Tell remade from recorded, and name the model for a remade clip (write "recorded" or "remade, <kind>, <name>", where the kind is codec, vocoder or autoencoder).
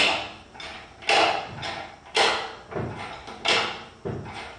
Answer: recorded